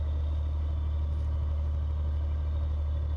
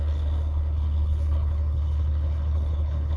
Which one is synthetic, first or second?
second